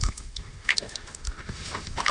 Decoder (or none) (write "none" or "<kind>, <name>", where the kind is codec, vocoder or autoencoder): autoencoder, DAC-VAE